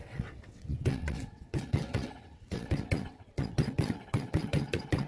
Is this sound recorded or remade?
remade